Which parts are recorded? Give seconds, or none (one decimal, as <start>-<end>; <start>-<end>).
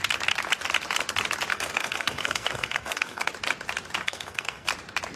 0.0-1.5; 3.3-4.0; 4.7-5.2